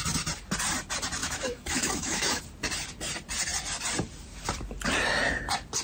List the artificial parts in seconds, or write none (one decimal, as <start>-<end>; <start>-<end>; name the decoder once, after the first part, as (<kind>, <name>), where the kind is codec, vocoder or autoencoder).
1.2-2.4 (autoencoder, DAC-VAE)